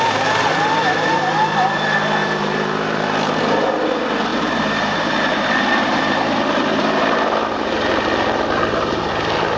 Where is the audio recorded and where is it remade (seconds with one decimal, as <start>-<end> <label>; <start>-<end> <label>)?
0.0-2.2 recorded; 2.2-3.5 remade; 3.5-4.3 recorded; 4.3-9.1 remade; 9.1-9.6 recorded